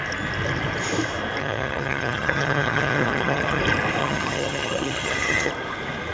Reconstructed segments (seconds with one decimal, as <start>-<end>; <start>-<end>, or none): 1.4-3.6; 4.0-5.5